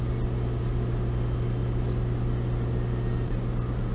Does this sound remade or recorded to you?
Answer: recorded